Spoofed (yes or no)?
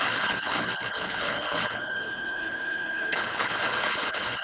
yes